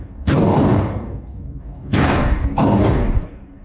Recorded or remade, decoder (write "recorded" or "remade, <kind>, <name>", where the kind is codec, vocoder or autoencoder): remade, codec, DAC